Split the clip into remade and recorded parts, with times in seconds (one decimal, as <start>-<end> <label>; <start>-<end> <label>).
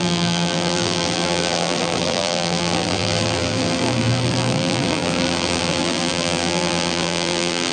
0.0-7.7 remade